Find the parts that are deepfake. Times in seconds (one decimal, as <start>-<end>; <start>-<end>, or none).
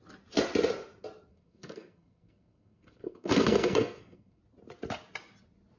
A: 1.3-4.4